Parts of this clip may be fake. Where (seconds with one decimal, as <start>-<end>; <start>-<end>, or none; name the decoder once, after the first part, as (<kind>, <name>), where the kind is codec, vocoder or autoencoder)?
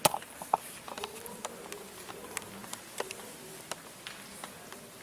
2.6-3.5 (vocoder, BigVGAN v2)